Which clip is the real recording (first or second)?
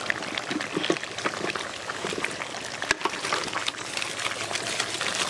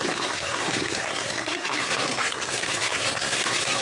first